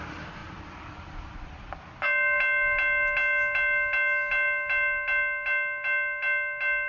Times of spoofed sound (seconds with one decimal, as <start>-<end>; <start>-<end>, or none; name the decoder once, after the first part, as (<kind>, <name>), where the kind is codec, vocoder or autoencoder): 0.4-1.8 (vocoder, BigVGAN v2)